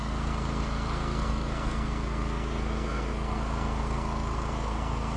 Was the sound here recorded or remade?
remade